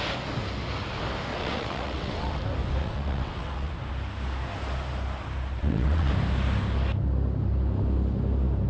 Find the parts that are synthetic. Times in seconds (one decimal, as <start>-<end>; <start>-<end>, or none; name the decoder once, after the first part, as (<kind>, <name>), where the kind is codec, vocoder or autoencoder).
1.3-2.4 (vocoder, WaveNeXt); 2.8-3.7; 5.6-6.1